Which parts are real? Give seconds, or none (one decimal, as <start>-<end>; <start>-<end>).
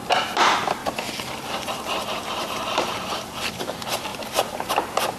0.0-0.8; 3.5-5.2